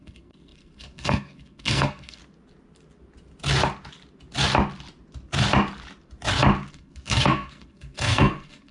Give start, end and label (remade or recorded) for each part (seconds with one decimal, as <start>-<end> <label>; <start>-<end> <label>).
0.0-2.2 remade; 2.2-6.7 recorded; 6.7-8.7 remade